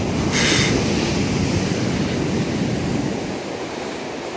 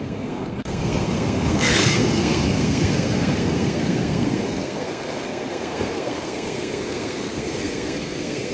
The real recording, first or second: first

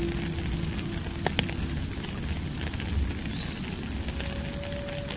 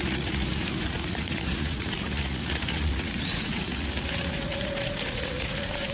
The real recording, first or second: first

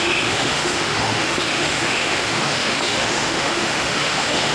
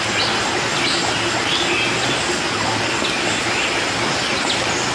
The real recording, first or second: second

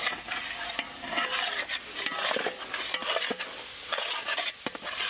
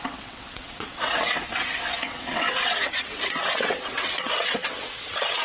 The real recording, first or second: first